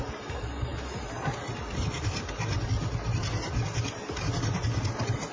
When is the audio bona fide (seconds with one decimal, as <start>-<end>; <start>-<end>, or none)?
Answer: 0.0-5.3